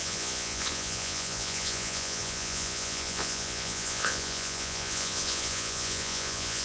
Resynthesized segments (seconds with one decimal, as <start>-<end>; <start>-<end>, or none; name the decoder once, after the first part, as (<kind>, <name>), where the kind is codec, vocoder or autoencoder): 0.0-6.6 (vocoder, Vocos)